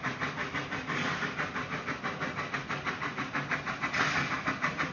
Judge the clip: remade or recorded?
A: recorded